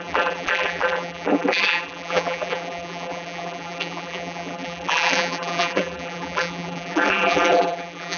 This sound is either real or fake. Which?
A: fake